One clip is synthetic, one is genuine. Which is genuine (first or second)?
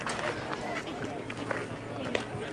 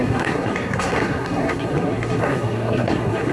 first